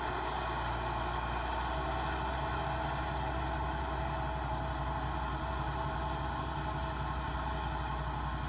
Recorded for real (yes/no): yes